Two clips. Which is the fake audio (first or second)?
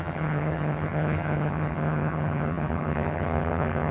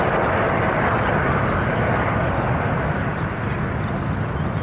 first